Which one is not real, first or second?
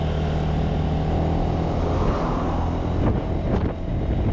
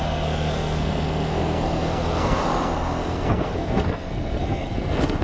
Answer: second